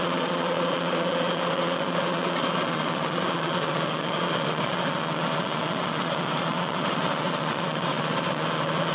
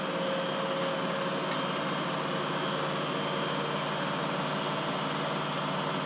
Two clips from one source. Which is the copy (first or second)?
first